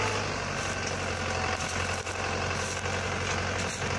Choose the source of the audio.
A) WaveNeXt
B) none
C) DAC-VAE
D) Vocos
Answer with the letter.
B